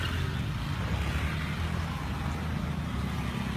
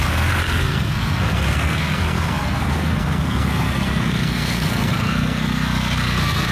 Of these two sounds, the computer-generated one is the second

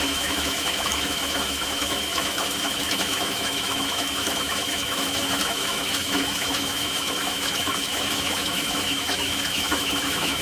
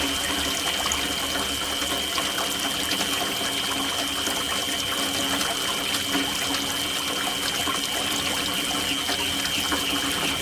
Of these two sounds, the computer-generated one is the first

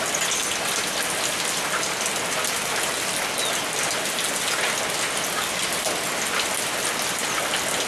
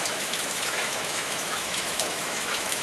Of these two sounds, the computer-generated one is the second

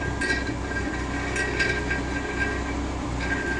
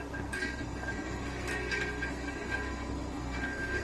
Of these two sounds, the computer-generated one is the second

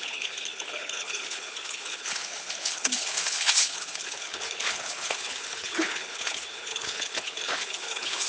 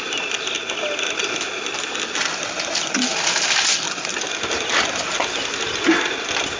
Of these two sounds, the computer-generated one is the first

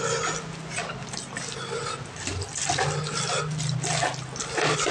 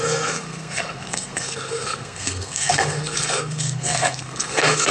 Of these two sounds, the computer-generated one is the second